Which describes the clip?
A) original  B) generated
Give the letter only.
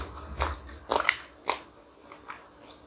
A